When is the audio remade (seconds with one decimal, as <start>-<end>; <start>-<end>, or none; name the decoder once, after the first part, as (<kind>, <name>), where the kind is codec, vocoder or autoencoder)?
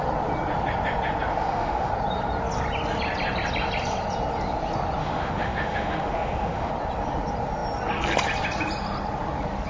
1.3-1.9 (autoencoder, DAC-VAE); 5.0-6.7